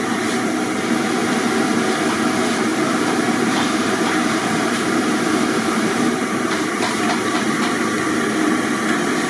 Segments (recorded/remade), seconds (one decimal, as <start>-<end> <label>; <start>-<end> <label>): 0.0-2.7 recorded; 2.7-7.6 remade; 7.6-9.3 recorded